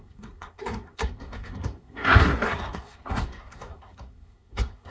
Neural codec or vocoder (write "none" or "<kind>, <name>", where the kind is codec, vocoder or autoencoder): codec, SNAC